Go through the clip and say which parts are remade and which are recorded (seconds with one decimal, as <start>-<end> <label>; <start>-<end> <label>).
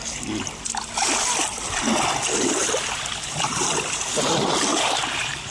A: 0.0-2.6 recorded; 2.6-4.0 remade; 4.0-4.7 recorded; 4.7-5.5 remade